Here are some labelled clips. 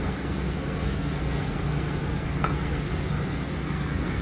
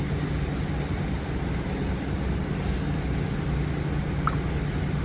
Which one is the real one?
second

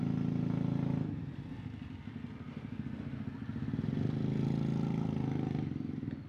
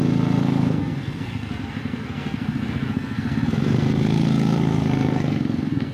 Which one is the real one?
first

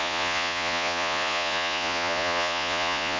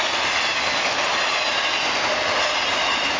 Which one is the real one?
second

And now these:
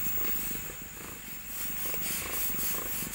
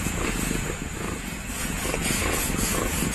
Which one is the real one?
first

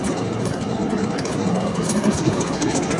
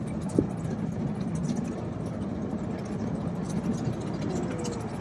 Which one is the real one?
second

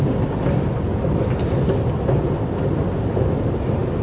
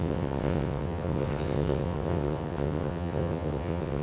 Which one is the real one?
first